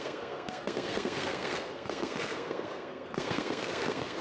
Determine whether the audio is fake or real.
fake